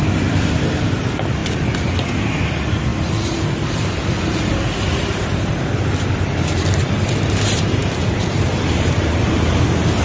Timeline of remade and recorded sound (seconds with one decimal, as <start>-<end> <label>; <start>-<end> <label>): 0.0-10.0 remade

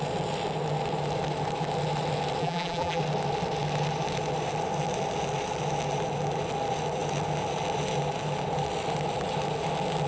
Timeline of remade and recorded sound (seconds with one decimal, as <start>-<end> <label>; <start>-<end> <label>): 0.0-2.4 recorded; 2.4-3.0 remade; 3.0-10.1 recorded

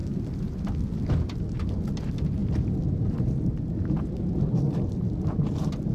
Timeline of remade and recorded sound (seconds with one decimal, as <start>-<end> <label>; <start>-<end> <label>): 0.0-5.9 recorded